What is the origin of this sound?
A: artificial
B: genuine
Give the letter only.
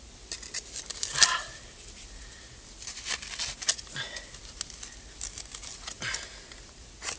B